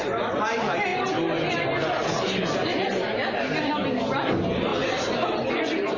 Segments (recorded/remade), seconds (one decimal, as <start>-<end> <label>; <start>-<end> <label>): 0.0-6.0 recorded